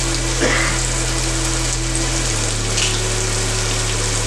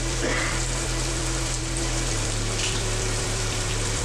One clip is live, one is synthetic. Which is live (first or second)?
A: first